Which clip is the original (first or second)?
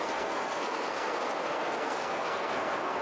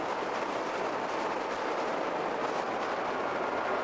second